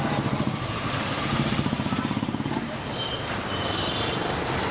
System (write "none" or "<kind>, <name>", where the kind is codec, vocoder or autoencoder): vocoder, BigVGAN v2